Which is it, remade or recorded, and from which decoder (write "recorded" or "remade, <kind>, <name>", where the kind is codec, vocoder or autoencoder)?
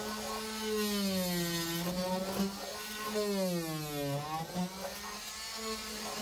recorded